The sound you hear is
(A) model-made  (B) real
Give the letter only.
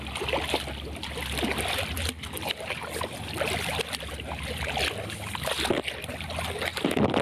B